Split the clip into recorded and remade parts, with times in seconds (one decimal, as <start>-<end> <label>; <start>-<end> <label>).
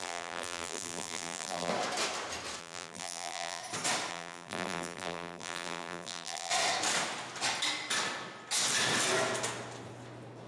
0.0-1.7 remade; 1.7-2.6 recorded; 2.6-3.6 remade; 3.6-4.1 recorded; 4.1-6.5 remade; 6.5-10.5 recorded